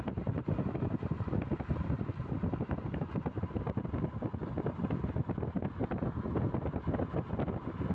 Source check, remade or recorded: recorded